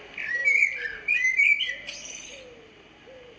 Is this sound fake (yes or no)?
no